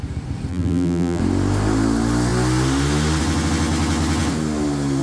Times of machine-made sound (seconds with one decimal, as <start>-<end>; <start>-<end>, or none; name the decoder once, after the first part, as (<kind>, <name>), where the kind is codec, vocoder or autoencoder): 0.5-1.2 (vocoder, BigVGAN v2)

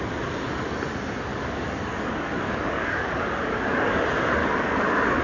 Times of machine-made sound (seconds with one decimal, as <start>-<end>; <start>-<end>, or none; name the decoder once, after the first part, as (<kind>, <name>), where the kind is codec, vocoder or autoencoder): 1.3-4.0 (codec, DAC); 4.4-5.2

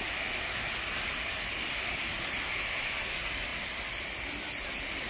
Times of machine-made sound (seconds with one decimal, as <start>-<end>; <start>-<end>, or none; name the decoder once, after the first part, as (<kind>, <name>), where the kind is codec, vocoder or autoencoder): 2.1-2.9 (vocoder, BigVGAN v2)

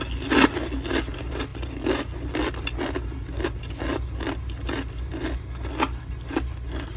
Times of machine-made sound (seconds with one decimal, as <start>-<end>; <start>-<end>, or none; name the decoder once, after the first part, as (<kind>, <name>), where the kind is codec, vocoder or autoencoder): none

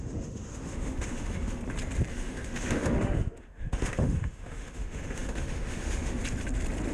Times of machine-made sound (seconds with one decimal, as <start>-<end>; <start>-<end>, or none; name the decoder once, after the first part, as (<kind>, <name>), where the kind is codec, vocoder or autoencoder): 0.0-1.6 (autoencoder, DAC-VAE); 2.1-6.2

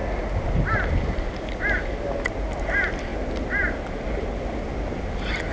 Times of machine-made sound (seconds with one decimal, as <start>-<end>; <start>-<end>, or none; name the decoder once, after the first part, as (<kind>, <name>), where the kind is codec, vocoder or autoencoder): none

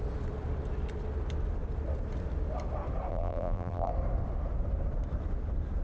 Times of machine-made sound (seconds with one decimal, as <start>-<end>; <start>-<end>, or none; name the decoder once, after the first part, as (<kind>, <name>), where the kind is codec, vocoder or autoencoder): 3.1-3.9 (vocoder, BigVGAN v2)

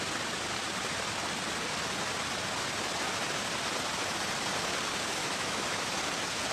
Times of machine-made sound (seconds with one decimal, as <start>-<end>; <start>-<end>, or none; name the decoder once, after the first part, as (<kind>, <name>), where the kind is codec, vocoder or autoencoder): 5.2-6.0 (autoencoder, DAC-VAE)